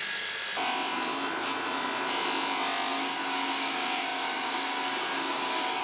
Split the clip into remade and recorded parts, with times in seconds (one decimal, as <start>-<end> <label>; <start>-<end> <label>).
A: 0.0-2.9 recorded; 2.9-5.8 remade